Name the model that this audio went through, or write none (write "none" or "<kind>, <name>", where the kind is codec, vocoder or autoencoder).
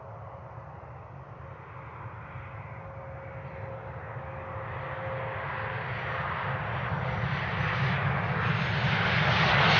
none